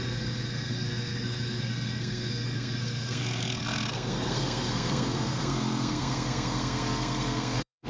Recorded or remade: remade